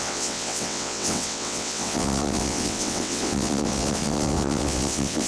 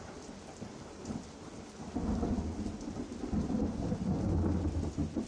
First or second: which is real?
second